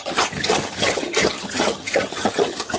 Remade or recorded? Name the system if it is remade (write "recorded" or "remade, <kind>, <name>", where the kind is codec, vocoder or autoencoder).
remade, vocoder, HiFi-GAN